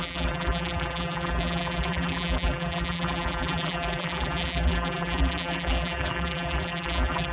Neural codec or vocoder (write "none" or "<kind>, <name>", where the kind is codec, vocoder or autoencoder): vocoder, BigVGAN v2